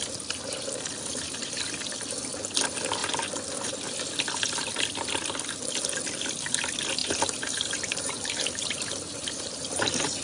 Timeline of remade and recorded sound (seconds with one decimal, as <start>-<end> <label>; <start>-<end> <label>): 0.0-7.0 recorded; 7.0-10.2 remade